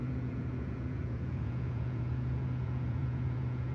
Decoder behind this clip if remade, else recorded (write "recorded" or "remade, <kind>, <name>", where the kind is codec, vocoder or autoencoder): remade, vocoder, Vocos